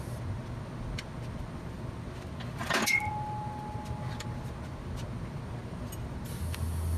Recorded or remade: recorded